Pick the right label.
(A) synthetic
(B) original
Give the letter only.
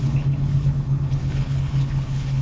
A